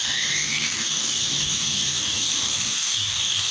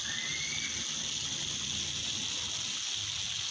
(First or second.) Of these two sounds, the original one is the second